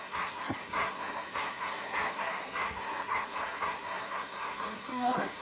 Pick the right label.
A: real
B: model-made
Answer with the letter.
B